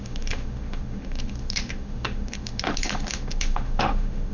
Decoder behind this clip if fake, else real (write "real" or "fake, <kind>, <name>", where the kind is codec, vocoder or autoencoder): fake, autoencoder, DAC-VAE